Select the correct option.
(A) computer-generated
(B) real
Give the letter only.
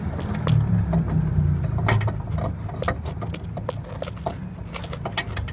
B